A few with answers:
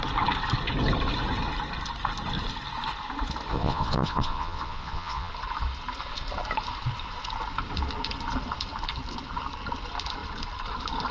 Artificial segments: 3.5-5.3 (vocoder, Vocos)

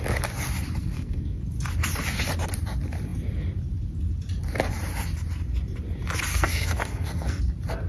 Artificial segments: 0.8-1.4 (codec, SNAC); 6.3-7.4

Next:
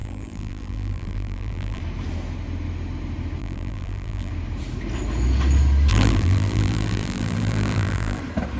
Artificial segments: 0.0-1.8 (vocoder, BigVGAN v2); 3.4-4.3; 5.9-8.2